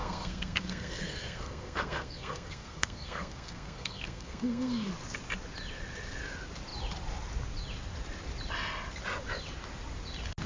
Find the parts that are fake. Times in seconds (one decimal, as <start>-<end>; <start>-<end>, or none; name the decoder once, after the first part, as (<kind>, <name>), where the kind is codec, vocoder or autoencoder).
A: 0.0-4.9 (codec, SNAC)